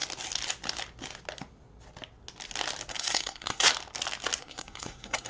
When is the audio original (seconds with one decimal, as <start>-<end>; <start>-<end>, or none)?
0.0-2.9; 3.7-4.4